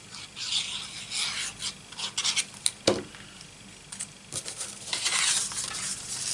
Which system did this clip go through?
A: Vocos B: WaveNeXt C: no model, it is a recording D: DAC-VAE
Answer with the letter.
C